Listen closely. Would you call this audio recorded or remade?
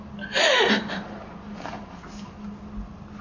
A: recorded